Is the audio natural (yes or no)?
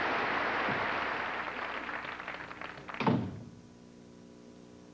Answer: yes